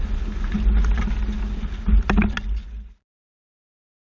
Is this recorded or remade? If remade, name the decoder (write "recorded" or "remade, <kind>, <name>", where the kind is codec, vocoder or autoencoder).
recorded